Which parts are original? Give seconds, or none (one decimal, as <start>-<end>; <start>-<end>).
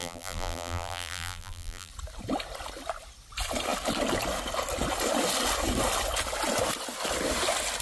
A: 1.9-7.8